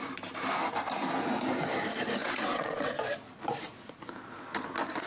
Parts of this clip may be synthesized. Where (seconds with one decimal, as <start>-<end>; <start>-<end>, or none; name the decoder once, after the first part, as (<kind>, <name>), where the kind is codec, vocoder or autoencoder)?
2.2-2.9 (vocoder, WaveNeXt)